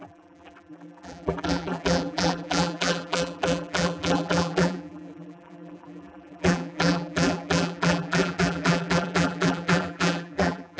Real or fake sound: fake